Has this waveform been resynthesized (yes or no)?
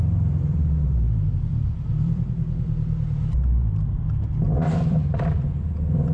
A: yes